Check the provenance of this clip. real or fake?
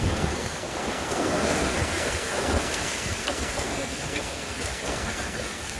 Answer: fake